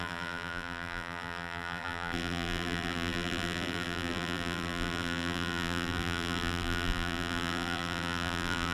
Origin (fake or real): fake